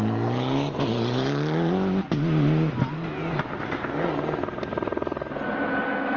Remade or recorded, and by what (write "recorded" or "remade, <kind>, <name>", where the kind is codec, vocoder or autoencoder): recorded